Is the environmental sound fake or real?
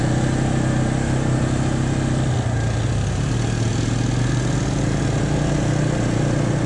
real